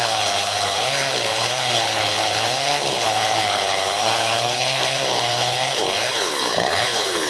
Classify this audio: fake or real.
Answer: fake